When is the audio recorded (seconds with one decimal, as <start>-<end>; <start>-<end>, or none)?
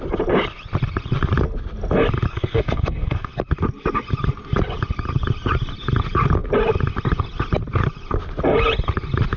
0.0-2.3; 3.3-9.4